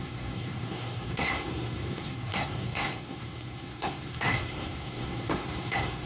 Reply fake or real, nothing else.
fake